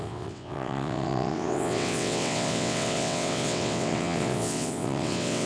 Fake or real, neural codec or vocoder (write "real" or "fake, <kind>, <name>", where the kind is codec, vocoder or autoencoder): fake, vocoder, WaveNeXt